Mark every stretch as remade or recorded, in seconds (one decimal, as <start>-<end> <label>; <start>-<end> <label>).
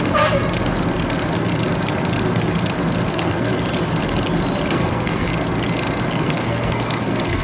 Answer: 0.0-0.4 remade; 0.4-3.1 recorded; 3.1-3.5 remade; 3.5-4.7 recorded; 4.7-5.3 remade; 5.3-6.1 recorded; 6.1-7.4 remade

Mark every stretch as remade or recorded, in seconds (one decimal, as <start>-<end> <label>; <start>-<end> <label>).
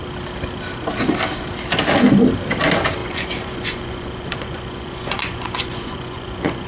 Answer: 0.0-3.0 recorded; 3.0-6.7 remade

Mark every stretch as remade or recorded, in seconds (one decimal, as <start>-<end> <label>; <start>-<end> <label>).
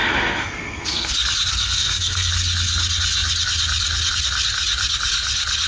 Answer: 0.0-1.1 remade; 1.1-1.5 recorded; 1.5-2.3 remade; 2.3-5.7 recorded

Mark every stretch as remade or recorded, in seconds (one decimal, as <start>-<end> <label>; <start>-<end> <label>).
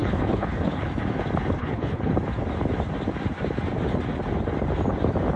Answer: 0.0-0.8 remade; 0.8-1.6 recorded; 1.6-2.1 remade; 2.1-5.4 recorded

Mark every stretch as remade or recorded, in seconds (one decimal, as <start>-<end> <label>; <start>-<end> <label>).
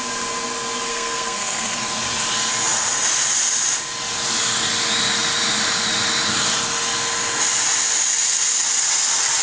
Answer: 0.0-0.9 recorded; 0.9-1.8 remade; 1.8-9.4 recorded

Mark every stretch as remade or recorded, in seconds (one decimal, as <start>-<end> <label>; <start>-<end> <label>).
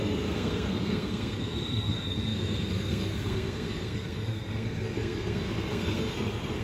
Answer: 0.0-6.6 remade